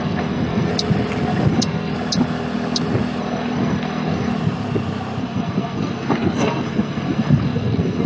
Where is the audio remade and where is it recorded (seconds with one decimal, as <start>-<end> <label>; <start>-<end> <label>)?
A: 0.0-0.7 remade; 0.7-1.5 recorded; 1.5-1.9 remade; 1.9-3.2 recorded; 3.2-4.3 remade; 4.3-5.2 recorded; 5.2-8.1 remade